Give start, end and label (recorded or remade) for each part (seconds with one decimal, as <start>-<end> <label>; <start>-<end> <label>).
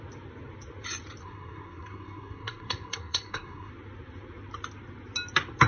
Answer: 0.0-1.2 recorded; 1.2-3.7 remade; 3.7-5.7 recorded